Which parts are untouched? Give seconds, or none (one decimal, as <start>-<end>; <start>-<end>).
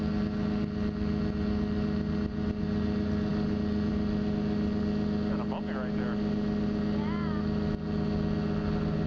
0.0-9.1